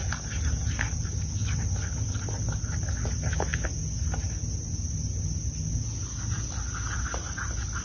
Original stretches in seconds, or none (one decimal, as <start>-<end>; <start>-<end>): 0.0-7.8